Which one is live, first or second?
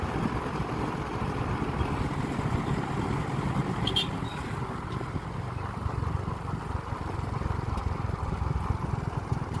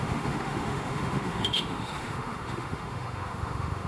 first